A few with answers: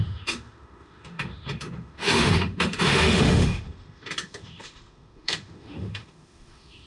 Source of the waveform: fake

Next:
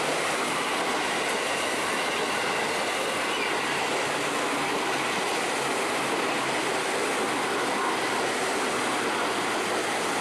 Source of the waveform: real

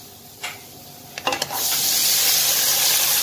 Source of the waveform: real